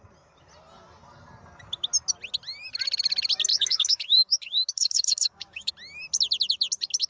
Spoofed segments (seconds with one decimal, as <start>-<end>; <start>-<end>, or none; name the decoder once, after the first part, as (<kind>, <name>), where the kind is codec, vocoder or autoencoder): 3.5-5.7 (codec, DAC)